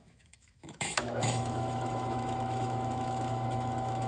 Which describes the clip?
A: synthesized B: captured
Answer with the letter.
A